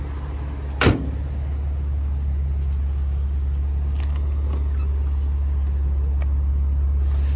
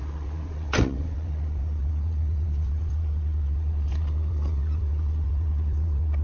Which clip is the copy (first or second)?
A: second